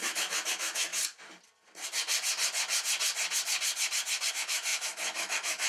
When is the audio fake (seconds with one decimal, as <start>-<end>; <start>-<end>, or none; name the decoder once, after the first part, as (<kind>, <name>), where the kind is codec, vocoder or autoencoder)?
0.0-0.9 (autoencoder, DAC-VAE); 4.3-5.7